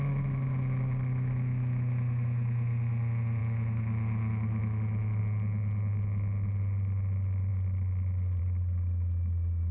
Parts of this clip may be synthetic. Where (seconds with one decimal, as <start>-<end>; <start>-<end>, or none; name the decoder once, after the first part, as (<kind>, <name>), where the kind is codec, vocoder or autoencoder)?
none

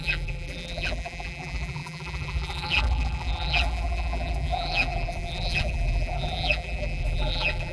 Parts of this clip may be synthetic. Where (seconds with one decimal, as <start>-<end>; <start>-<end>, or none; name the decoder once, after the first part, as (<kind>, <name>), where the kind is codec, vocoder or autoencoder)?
0.0-7.7 (vocoder, BigVGAN v2)

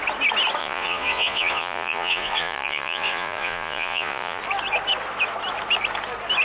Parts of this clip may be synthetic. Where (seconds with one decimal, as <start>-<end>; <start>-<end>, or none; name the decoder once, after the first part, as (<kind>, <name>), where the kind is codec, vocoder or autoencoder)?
0.6-4.4 (vocoder, Vocos)

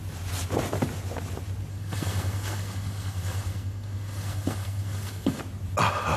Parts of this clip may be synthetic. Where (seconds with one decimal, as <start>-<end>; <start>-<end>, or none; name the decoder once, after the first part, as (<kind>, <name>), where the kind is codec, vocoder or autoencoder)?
1.7-5.4 (codec, SNAC)

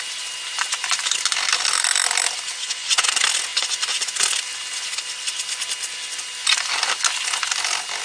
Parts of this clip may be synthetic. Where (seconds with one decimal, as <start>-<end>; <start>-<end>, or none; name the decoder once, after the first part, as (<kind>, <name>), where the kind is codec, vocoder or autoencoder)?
2.5-3.1 (vocoder, WaveNeXt)

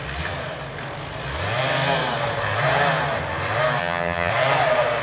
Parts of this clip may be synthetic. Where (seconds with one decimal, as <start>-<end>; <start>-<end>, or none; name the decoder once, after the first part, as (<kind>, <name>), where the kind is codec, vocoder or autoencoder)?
3.8-4.3 (vocoder, HiFi-GAN)

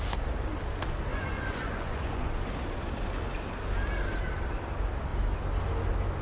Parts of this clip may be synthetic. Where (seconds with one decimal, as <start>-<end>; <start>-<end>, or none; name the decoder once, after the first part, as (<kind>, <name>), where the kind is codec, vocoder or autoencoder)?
1.1-2.3 (vocoder, Vocos)

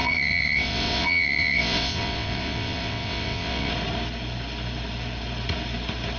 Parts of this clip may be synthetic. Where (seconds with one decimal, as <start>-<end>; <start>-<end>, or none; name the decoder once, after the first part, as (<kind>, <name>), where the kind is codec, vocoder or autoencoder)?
0.0-3.7 (vocoder, WaveNeXt)